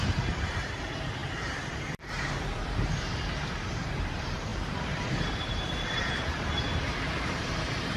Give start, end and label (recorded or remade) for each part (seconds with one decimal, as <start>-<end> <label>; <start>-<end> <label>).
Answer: 0.0-8.0 remade